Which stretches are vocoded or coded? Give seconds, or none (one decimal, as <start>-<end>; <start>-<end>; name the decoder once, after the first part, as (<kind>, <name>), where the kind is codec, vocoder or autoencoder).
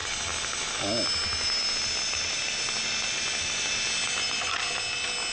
none